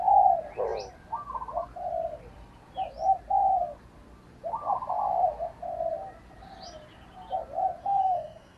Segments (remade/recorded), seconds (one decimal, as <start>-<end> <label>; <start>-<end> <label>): 0.0-7.8 recorded; 7.8-8.6 remade